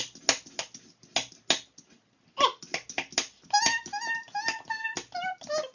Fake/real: real